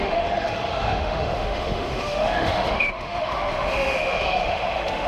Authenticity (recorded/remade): remade